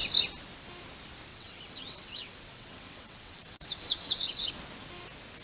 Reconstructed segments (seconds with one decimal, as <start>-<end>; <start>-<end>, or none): 1.3-4.5

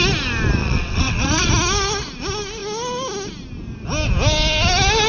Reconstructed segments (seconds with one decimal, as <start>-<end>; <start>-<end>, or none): 0.6-1.5